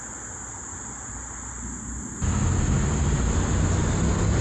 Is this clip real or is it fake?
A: real